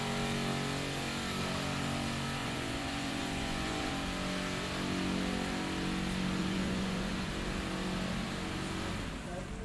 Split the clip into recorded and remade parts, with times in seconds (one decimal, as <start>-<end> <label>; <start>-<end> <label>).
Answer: 0.0-2.4 recorded; 2.4-3.9 remade; 3.9-6.4 recorded; 6.4-7.3 remade; 7.3-9.6 recorded